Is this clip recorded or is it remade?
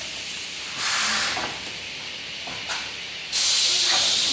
recorded